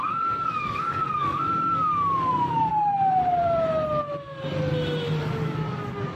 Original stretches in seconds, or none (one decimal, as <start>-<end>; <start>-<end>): 2.7-5.2